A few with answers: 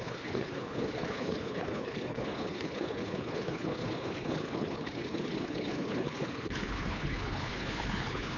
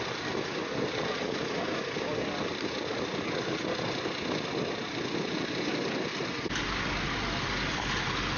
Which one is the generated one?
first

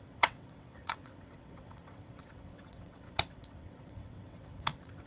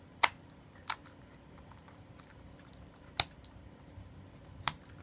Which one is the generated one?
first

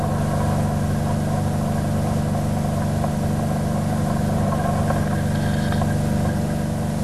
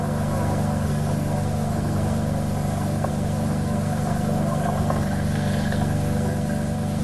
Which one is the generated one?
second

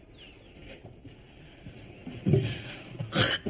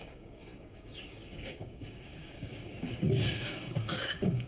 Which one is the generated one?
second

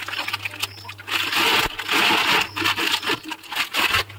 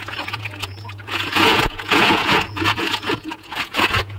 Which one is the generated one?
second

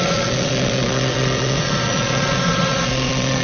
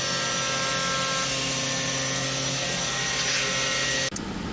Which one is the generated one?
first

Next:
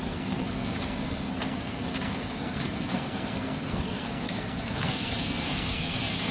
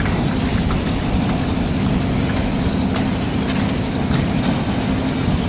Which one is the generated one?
first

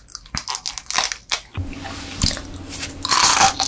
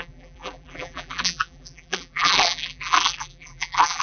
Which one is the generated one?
second